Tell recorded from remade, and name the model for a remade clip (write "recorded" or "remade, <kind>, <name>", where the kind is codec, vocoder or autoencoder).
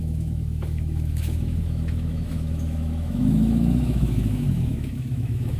remade, autoencoder, DAC-VAE